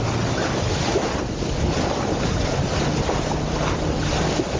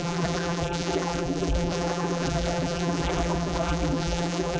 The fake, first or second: second